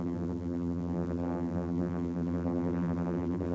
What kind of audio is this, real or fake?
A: fake